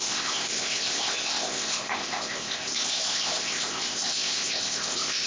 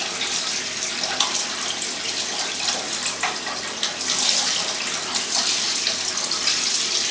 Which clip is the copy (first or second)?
first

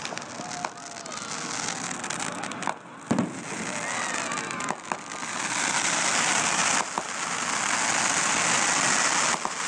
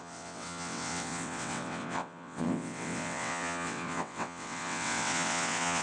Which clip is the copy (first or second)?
second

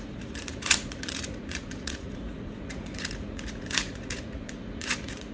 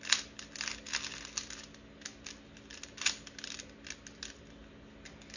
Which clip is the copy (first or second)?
first